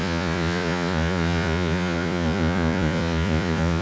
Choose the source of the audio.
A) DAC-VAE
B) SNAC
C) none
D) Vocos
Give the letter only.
D